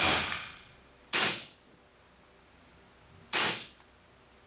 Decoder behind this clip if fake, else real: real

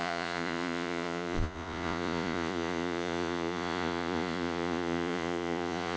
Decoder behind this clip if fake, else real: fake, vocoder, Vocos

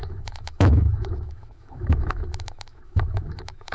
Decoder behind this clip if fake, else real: fake, autoencoder, DAC-VAE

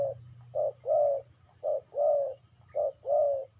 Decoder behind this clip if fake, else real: real